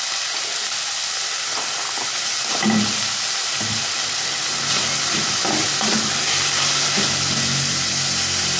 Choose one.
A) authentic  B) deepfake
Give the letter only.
A